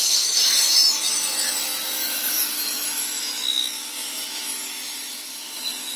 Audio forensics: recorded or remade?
remade